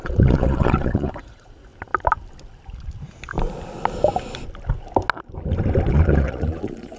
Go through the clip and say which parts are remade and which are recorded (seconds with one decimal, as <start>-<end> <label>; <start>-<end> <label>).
0.0-1.7 remade; 1.7-5.9 recorded; 5.9-7.0 remade